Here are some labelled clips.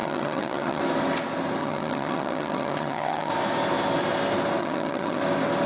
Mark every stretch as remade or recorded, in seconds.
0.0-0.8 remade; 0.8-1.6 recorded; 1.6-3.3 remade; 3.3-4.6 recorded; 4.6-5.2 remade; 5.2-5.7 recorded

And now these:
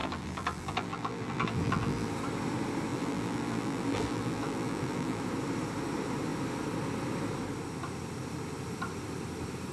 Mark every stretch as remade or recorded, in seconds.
0.0-2.1 remade; 2.1-2.9 recorded; 2.9-5.2 remade; 5.2-9.7 recorded

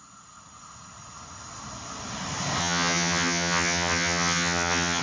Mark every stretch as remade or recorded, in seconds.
0.0-2.6 recorded; 2.6-5.0 remade

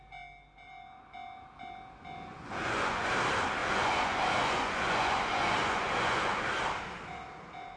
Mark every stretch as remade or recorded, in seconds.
0.0-2.3 recorded; 2.3-3.1 remade; 3.1-3.6 recorded; 3.6-6.4 remade; 6.4-7.8 recorded

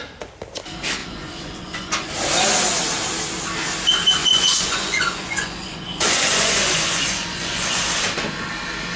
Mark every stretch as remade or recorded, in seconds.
0.0-1.0 recorded; 1.0-2.1 remade; 2.1-4.2 recorded; 4.2-7.8 remade; 7.8-9.0 recorded